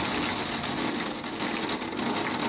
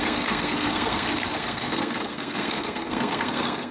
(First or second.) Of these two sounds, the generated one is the second